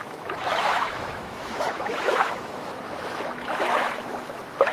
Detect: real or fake fake